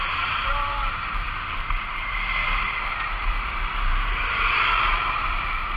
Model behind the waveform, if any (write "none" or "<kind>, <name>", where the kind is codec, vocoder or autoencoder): vocoder, BigVGAN v2